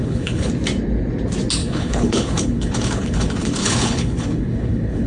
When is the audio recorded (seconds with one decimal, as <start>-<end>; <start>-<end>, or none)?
0.5-1.6